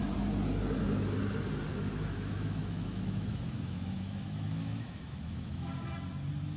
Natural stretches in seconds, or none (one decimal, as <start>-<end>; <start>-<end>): 0.0-1.7; 5.7-6.6